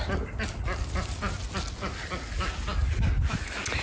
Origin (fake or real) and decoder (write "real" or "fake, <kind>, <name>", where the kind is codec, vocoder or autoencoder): real